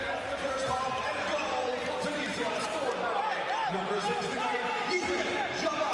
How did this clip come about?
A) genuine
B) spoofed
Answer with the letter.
B